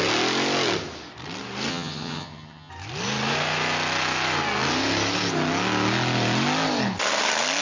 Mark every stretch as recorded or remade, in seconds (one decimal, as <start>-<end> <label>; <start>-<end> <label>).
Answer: 0.0-1.7 recorded; 1.7-2.7 remade; 2.7-7.6 recorded

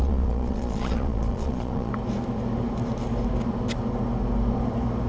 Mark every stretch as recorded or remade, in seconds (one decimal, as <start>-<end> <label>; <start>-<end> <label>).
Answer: 0.0-1.9 remade; 1.9-5.1 recorded

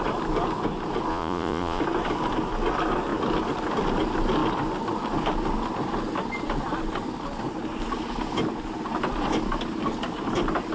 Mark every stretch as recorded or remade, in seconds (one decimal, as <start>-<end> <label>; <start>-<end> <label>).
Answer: 0.0-1.1 recorded; 1.1-1.8 remade; 1.8-10.7 recorded

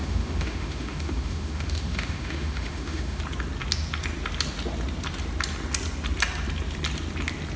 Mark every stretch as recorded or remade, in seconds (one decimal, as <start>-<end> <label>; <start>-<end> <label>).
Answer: 0.0-3.2 remade; 3.2-7.6 recorded

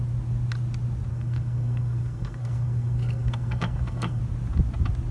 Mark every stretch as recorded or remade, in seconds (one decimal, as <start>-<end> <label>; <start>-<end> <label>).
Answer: 0.0-1.1 recorded; 1.1-4.2 remade; 4.2-5.1 recorded

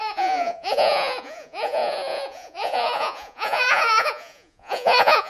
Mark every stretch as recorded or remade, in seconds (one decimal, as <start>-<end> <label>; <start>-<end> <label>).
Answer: 0.0-5.3 remade

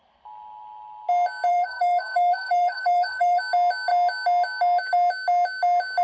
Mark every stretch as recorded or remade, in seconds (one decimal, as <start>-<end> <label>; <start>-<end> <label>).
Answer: 0.0-1.5 recorded; 1.5-3.4 remade; 3.4-6.0 recorded

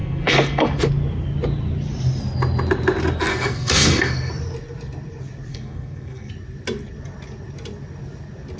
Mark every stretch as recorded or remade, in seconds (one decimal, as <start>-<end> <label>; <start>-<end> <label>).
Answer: 0.0-0.8 remade; 0.8-3.3 recorded; 3.3-4.3 remade; 4.3-5.5 recorded; 5.5-6.3 remade; 6.3-8.6 recorded